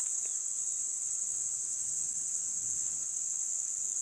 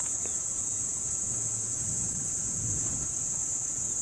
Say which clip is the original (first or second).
first